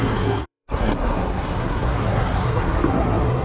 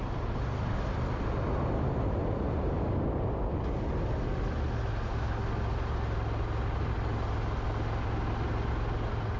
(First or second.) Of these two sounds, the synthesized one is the first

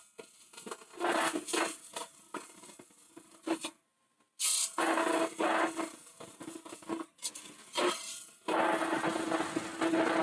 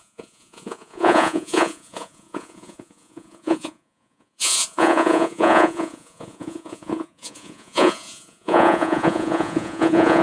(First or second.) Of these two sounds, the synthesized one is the second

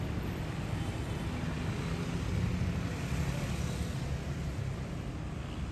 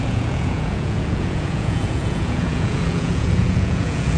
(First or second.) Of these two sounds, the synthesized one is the second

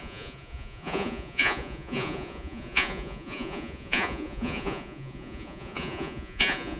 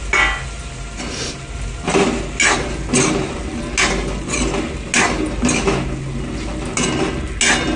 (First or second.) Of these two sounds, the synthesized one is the first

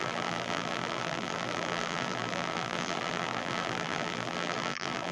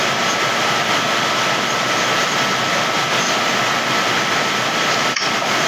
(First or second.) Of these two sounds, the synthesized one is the first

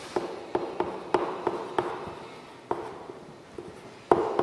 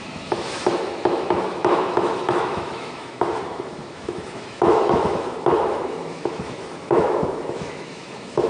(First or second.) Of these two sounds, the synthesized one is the second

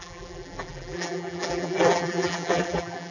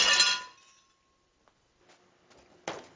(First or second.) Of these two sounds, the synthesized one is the first